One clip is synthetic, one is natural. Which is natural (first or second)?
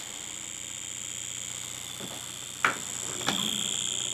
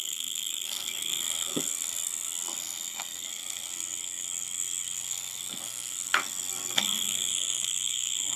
first